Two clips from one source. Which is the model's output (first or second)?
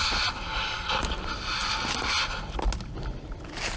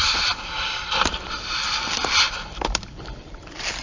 second